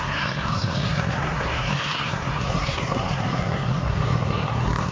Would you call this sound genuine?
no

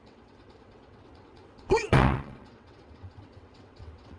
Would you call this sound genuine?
no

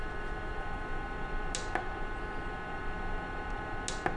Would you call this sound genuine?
yes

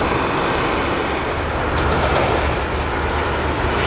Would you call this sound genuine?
yes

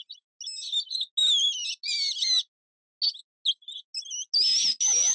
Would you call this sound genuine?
yes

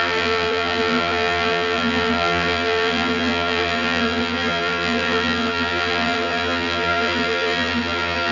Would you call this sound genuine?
no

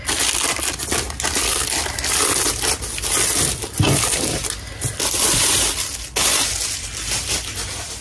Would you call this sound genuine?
yes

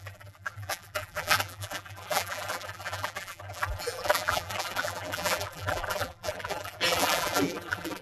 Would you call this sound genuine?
no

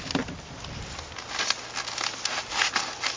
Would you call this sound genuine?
yes